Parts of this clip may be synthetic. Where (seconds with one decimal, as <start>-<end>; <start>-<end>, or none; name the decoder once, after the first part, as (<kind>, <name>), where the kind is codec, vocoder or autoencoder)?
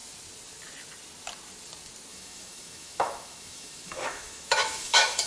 2.1-5.3 (autoencoder, DAC-VAE)